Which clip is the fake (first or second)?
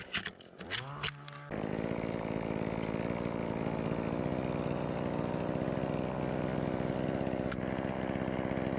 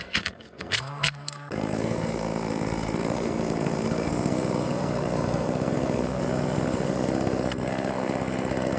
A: second